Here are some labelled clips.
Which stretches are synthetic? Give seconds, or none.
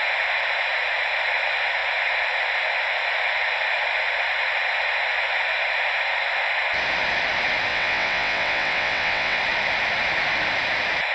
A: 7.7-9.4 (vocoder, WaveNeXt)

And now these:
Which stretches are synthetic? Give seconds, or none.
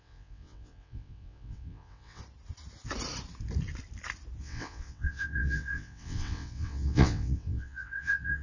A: 0.0-2.2 (vocoder, WaveNeXt); 4.4-8.4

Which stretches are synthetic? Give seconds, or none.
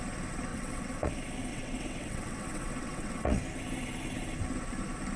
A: 0.5-1.1 (vocoder, WaveNeXt); 1.5-3.4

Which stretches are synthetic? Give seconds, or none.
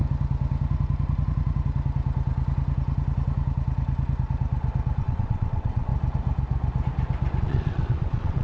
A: 5.0-5.9 (vocoder, WaveNeXt); 7.4-8.4